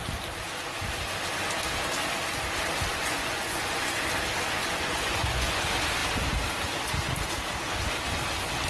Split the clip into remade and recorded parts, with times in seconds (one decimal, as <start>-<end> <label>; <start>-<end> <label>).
0.0-2.9 recorded; 2.9-4.0 remade; 4.0-4.6 recorded; 4.6-5.6 remade; 5.6-8.7 recorded